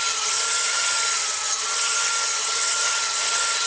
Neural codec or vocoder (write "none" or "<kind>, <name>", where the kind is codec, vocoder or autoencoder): vocoder, HiFi-GAN